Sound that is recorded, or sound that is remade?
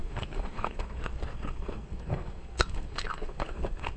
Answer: remade